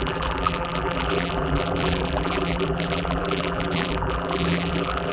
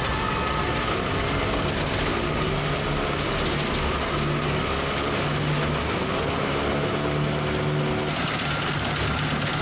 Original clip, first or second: second